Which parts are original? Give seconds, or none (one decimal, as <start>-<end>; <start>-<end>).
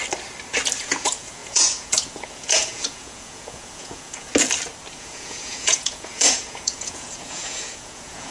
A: 0.0-0.8; 4.3-4.9